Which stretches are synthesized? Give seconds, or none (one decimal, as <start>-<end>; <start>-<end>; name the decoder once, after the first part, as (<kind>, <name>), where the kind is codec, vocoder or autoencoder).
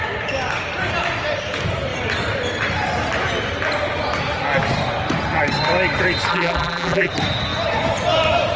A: 6.3-7.1 (vocoder, BigVGAN v2)